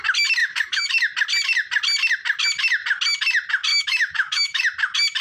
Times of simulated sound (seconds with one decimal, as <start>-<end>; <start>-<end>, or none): 0.4-0.9; 3.7-4.6